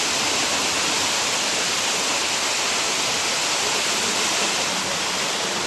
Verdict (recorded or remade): recorded